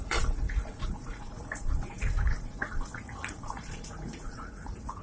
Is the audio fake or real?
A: fake